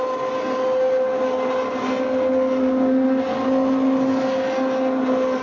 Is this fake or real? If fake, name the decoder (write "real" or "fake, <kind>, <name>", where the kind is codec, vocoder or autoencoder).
real